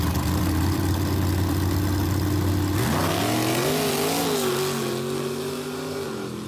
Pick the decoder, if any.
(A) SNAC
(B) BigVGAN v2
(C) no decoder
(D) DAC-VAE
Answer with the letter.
C